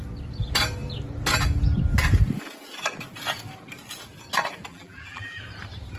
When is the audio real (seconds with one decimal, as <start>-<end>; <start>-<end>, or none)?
0.0-4.7; 5.4-6.0